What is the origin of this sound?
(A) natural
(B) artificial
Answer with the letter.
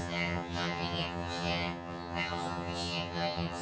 B